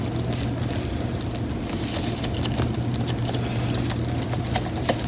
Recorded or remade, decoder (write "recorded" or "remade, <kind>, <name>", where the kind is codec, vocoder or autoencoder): recorded